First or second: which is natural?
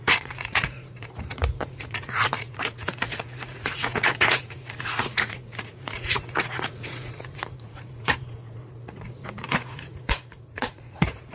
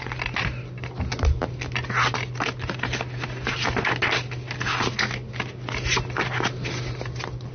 second